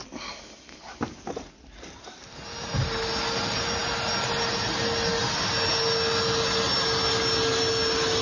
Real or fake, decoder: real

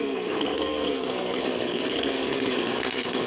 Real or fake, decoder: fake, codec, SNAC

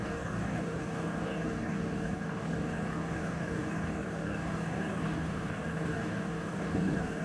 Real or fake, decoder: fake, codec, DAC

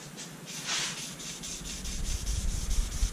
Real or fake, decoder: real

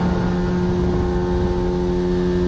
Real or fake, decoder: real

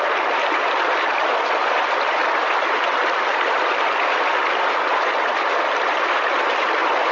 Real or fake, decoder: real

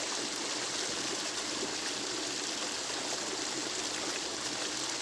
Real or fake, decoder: real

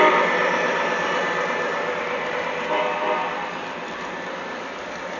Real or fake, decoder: real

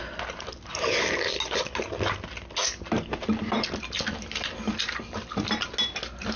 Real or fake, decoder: real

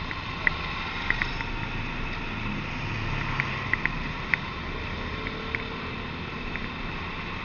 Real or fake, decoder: real